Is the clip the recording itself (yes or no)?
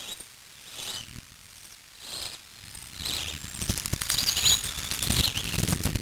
yes